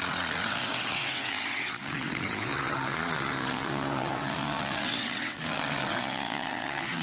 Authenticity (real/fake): fake